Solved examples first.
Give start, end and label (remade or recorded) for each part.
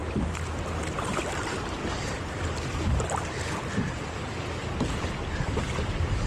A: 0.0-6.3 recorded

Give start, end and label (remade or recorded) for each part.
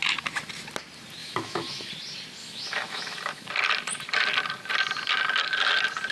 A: 0.0-1.2 recorded; 1.2-1.9 remade; 1.9-2.4 recorded; 2.4-3.5 remade; 3.5-6.1 recorded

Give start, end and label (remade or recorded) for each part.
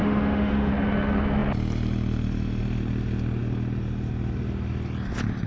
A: 0.0-0.7 remade; 0.7-5.5 recorded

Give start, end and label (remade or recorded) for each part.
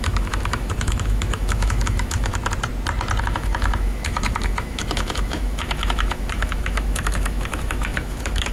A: 0.0-2.3 remade; 2.3-3.2 recorded; 3.2-8.5 remade